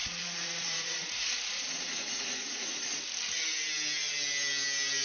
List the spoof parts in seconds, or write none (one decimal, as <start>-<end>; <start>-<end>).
0.0-3.0

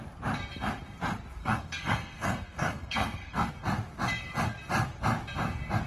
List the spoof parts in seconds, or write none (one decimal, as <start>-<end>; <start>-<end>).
1.4-3.5

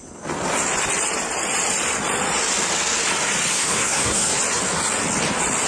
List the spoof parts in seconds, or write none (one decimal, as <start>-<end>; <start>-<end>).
3.5-4.4

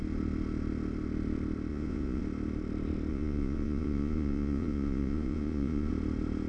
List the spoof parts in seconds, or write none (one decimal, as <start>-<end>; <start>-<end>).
1.7-2.2; 3.1-5.9

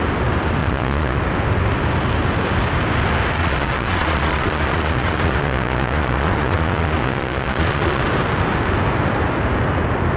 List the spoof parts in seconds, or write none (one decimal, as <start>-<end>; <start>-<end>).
0.6-1.2; 3.4-8.0

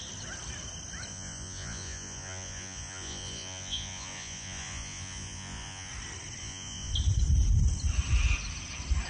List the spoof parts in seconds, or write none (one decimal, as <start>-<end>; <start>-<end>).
1.1-5.9; 6.4-6.9

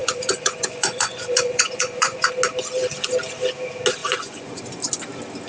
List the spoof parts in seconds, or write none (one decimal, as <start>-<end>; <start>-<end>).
0.0-2.3; 4.0-4.6